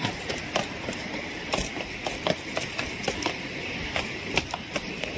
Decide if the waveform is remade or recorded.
remade